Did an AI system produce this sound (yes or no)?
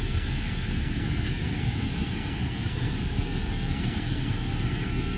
yes